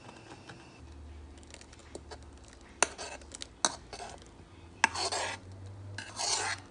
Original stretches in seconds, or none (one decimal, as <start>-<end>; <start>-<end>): 0.0-6.7